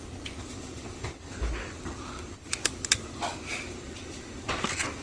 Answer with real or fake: real